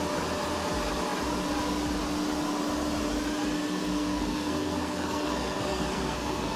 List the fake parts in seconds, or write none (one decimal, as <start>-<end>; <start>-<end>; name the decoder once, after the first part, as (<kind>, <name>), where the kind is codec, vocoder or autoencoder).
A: 3.8-6.6 (codec, SNAC)